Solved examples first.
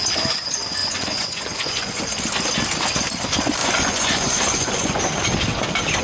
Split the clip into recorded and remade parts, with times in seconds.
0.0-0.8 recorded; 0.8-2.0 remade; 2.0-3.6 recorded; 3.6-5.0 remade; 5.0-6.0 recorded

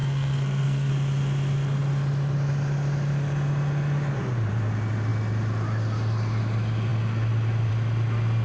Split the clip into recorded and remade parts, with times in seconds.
0.0-0.9 remade; 0.9-8.4 recorded

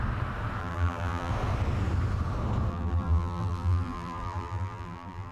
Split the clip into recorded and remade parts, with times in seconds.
0.0-0.6 recorded; 0.6-1.3 remade; 1.3-2.7 recorded; 2.7-5.3 remade

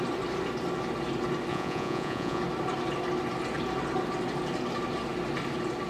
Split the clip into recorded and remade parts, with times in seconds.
0.0-1.5 recorded; 1.5-2.4 remade; 2.4-5.9 recorded

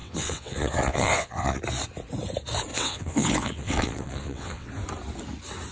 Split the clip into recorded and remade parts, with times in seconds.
0.0-1.6 remade; 1.6-2.7 recorded; 2.7-4.7 remade; 4.7-5.7 recorded